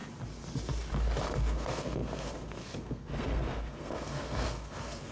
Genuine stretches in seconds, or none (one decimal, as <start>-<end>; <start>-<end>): 0.0-1.2